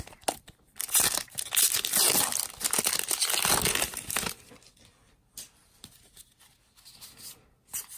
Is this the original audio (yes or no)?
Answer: yes